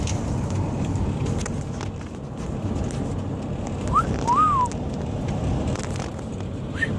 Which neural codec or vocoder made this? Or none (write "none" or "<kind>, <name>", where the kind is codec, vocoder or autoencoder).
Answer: none